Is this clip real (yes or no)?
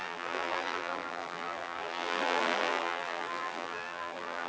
no